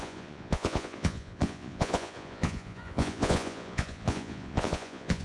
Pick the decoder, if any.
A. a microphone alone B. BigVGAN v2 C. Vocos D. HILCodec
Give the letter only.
C